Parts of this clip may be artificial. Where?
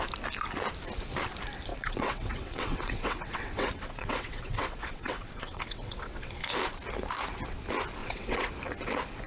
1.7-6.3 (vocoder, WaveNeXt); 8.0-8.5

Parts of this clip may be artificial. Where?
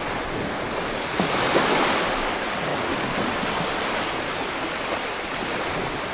none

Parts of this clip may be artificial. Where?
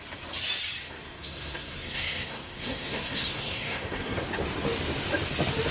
0.8-4.2 (codec, SNAC)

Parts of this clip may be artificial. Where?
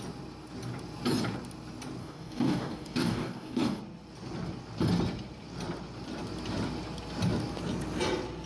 2.0-3.8 (codec, DAC)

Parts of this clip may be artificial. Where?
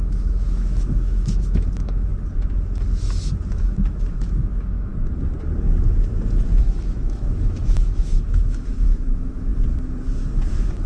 0.0-2.1 (autoencoder, DAC-VAE); 3.5-4.9; 6.6-9.5; 10.5-10.9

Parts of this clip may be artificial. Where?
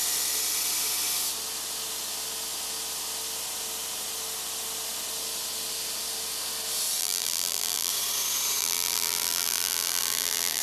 7.0-7.9 (vocoder, BigVGAN v2); 8.6-10.6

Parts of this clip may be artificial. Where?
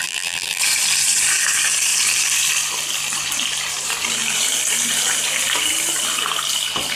0.0-0.6 (vocoder, BigVGAN v2)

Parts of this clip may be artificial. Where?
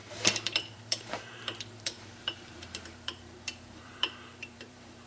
0.0-5.1 (vocoder, BigVGAN v2)